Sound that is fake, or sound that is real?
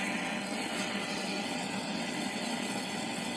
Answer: fake